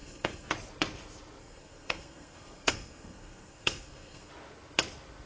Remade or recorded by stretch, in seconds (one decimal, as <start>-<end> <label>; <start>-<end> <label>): 0.0-0.5 remade; 0.5-1.4 recorded; 1.4-4.3 remade; 4.3-5.3 recorded